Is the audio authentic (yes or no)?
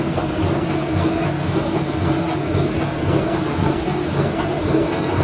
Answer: no